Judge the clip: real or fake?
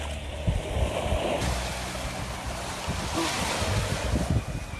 real